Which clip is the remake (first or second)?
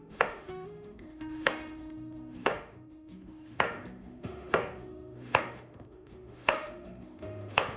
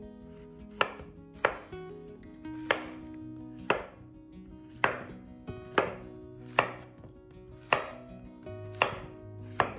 first